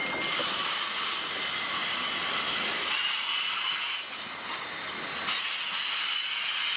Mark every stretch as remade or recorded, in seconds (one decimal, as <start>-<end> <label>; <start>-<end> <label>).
0.0-6.8 recorded